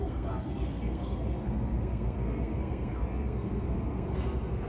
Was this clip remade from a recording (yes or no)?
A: yes